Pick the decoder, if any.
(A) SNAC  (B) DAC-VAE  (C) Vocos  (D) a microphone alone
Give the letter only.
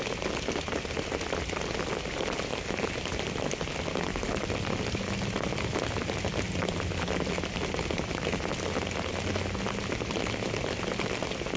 D